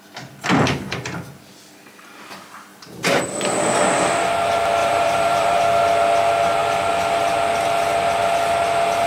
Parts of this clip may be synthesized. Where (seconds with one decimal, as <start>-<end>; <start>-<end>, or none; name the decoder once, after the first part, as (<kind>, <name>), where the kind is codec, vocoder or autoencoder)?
2.7-3.2 (vocoder, BigVGAN v2); 4.8-5.6